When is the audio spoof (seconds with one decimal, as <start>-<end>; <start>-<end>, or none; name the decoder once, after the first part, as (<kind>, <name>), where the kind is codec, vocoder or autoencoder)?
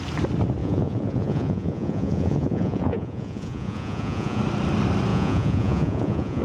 0.6-4.4 (vocoder, Vocos); 5.1-6.4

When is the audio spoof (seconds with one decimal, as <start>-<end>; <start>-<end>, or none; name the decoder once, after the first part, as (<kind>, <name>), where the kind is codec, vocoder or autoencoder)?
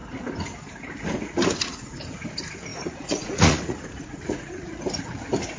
1.4-2.0 (vocoder, Vocos); 2.7-4.8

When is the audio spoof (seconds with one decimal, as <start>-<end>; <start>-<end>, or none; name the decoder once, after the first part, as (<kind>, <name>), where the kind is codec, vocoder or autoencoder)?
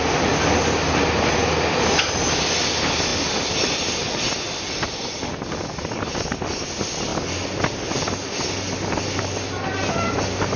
none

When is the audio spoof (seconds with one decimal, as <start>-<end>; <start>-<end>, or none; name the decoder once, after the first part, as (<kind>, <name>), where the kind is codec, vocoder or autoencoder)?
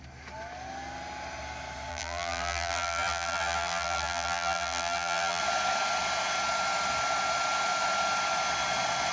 1.9-5.4 (vocoder, BigVGAN v2)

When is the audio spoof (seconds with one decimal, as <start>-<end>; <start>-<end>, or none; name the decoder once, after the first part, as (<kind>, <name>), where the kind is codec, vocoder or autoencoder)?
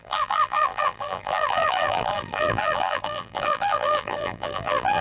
0.0-5.0 (vocoder, BigVGAN v2)